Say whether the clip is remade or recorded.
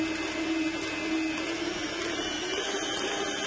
recorded